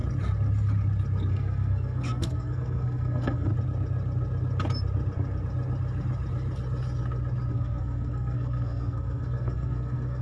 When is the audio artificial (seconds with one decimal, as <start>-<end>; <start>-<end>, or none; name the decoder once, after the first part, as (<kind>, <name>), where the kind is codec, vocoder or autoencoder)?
1.3-3.5 (codec, SNAC); 7.5-10.2